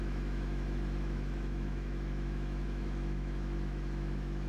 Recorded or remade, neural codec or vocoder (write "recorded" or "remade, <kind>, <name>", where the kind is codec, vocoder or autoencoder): remade, autoencoder, DAC-VAE